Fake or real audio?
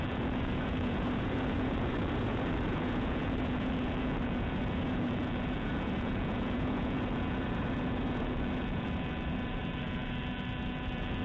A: fake